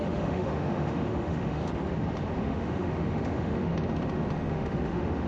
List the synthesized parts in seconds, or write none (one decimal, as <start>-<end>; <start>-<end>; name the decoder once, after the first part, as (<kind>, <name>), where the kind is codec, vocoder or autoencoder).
0.0-1.7 (autoencoder, DAC-VAE); 2.4-3.7; 4.5-5.3